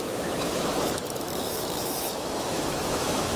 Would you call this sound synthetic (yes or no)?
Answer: yes